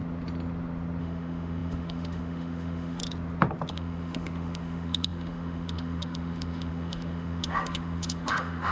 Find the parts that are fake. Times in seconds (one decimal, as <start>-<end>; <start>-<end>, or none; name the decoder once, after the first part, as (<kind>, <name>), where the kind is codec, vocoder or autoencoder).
1.0-3.0 (autoencoder, DAC-VAE); 3.7-8.7